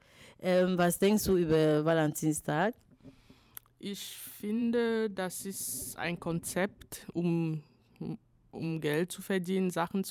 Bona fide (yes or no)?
no